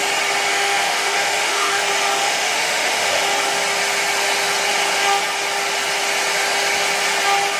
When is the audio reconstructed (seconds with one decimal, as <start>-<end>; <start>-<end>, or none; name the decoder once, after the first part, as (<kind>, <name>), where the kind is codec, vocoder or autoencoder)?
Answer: 0.5-1.8 (autoencoder, DAC-VAE); 2.2-3.2